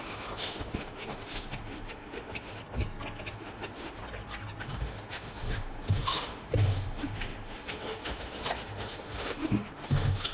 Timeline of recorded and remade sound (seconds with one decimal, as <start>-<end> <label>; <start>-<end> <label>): 0.0-2.6 remade; 2.6-3.3 recorded; 3.3-4.0 remade; 4.0-4.6 recorded; 4.6-10.3 remade